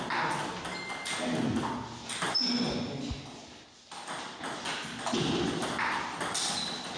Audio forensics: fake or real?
real